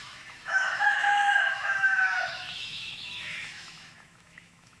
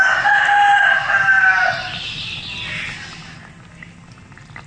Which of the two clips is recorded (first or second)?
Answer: second